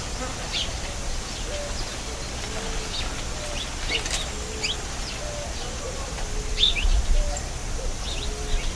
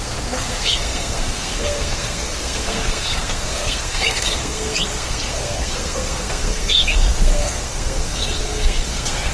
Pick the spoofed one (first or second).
second